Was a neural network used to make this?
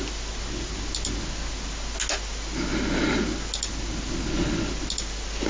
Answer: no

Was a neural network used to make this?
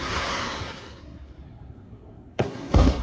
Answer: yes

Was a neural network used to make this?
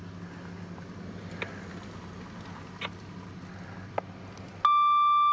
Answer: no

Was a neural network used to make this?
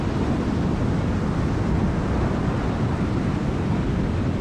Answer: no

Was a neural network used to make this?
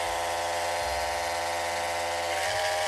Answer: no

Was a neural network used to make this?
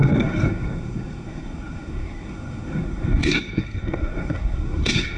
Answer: yes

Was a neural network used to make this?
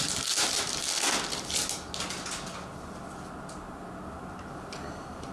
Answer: no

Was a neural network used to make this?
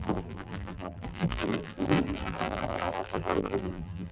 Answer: yes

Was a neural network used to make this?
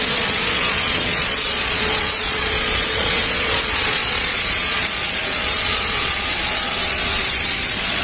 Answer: yes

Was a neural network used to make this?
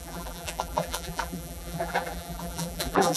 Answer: yes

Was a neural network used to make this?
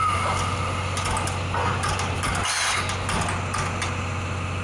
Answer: no